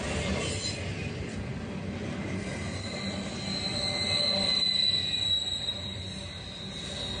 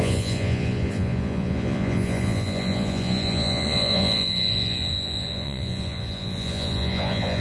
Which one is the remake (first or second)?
second